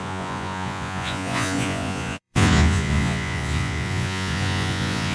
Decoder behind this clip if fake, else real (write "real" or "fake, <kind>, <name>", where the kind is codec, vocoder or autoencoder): fake, vocoder, Vocos